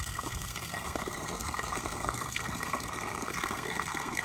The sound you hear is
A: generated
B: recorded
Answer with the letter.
A